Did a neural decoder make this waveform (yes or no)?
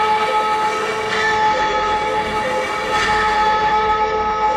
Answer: yes